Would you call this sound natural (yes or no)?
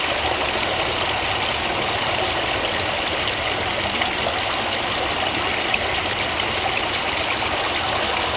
yes